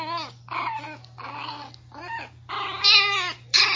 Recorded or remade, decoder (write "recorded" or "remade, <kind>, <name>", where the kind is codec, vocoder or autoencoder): recorded